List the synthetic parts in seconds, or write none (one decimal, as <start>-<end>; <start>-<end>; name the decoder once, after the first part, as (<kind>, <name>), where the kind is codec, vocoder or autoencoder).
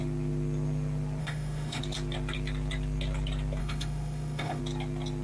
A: 1.2-1.8 (autoencoder, DAC-VAE); 3.6-4.6